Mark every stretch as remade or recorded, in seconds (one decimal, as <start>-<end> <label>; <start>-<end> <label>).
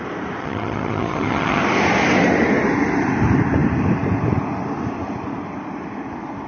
0.0-0.4 recorded; 0.4-1.6 remade; 1.6-6.5 recorded